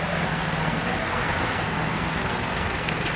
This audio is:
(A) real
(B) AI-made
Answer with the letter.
B